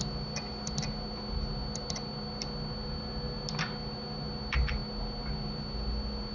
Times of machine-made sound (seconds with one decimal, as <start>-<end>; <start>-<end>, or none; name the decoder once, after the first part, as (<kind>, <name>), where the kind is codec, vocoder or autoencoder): none